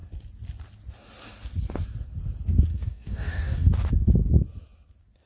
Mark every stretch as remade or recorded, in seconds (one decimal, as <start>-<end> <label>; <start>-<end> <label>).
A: 0.0-2.7 recorded; 2.7-3.7 remade; 3.7-5.3 recorded